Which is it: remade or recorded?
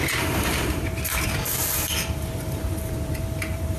remade